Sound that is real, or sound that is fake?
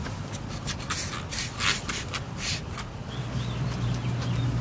real